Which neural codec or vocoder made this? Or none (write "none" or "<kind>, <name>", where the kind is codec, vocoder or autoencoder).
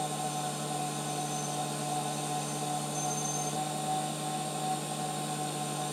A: none